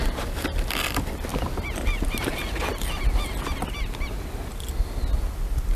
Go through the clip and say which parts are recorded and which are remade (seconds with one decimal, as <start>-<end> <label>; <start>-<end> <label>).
0.0-5.8 recorded